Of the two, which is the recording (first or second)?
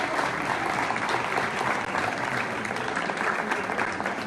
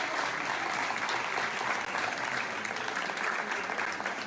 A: second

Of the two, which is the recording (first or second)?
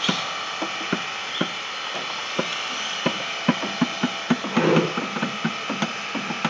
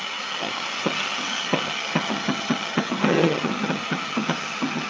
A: first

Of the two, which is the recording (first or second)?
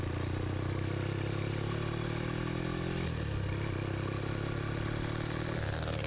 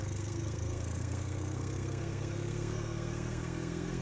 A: first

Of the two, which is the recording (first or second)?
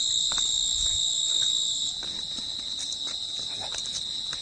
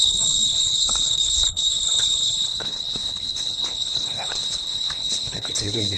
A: first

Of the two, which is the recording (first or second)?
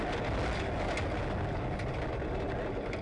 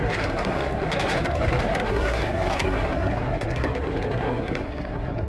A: first